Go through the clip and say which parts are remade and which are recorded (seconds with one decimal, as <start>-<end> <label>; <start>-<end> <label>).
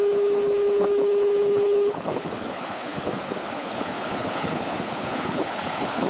0.0-6.1 remade